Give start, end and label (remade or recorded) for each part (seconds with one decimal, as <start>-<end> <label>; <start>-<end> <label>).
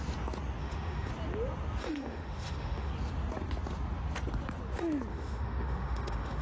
0.0-0.6 recorded; 0.6-1.1 remade; 1.1-1.8 recorded; 1.8-2.9 remade; 2.9-5.1 recorded; 5.1-6.4 remade